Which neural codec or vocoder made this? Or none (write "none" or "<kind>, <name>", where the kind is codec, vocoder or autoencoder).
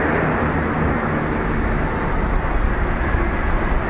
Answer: none